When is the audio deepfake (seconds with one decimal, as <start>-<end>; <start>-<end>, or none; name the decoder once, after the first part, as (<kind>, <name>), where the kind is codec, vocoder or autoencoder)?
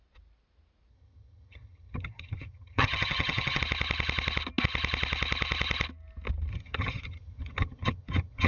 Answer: 0.9-3.6 (vocoder, HiFi-GAN); 6.5-8.5